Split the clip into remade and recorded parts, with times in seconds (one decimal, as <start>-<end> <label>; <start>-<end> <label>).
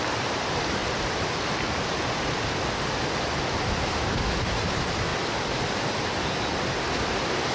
0.0-7.5 remade